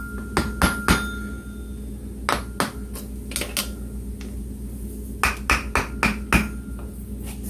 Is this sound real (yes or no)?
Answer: yes